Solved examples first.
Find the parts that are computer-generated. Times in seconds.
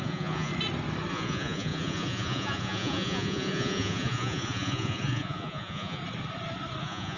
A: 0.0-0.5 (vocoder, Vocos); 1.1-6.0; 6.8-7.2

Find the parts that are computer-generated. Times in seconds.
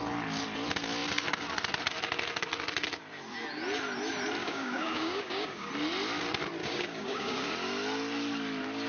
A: 4.4-5.7 (codec, DAC); 6.6-7.5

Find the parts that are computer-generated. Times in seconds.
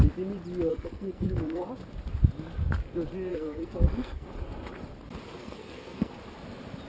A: 0.7-1.7 (codec, SNAC); 3.3-4.3; 5.4-6.1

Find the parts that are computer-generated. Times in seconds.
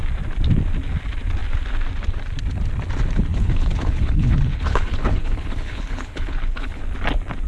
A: 3.3-6.8 (codec, HILCodec)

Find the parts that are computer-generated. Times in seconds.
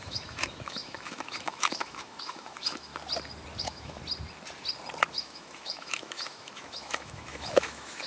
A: 0.0-2.9 (autoencoder, DAC-VAE); 3.6-4.0; 5.1-8.1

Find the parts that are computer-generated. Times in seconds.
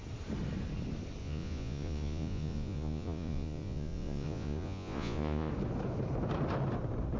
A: 1.2-5.5 (vocoder, Vocos)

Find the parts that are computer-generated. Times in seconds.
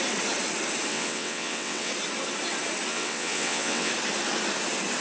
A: 0.9-1.9 (vocoder, WaveNeXt); 2.9-3.9